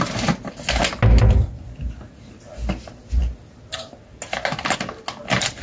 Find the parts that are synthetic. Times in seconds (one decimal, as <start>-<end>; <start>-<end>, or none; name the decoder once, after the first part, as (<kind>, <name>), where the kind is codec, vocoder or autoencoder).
none